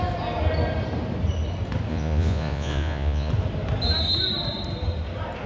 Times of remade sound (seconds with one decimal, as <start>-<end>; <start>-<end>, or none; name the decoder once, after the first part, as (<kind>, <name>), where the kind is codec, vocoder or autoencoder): 1.9-3.3 (vocoder, Vocos)

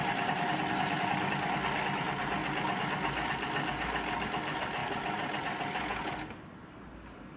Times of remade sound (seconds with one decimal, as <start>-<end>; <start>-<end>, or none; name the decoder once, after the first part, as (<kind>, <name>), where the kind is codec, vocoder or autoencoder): none

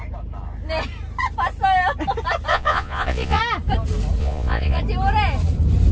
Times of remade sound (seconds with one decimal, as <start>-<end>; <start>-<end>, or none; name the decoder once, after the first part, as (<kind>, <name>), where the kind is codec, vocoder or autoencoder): 2.5-3.4 (vocoder, Vocos); 4.2-4.8

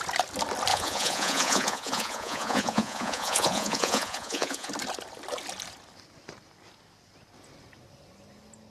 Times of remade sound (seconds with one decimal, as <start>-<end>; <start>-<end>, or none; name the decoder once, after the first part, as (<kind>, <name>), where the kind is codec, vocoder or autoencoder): 0.7-4.7 (vocoder, Vocos)

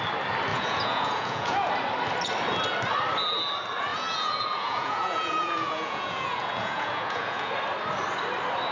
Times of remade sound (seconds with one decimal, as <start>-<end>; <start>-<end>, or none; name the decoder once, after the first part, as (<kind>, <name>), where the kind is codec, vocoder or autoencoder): 0.5-1.7 (vocoder, Vocos); 3.9-7.5

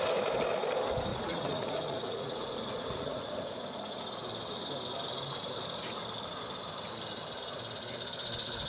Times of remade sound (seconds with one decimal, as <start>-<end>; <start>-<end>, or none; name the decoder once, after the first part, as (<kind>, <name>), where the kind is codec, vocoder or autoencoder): 1.1-4.0 (vocoder, Vocos)

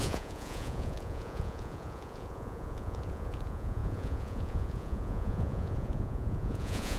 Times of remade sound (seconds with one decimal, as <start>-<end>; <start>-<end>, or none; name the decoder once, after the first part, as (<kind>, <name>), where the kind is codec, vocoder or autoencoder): 0.0-7.0 (vocoder, Vocos)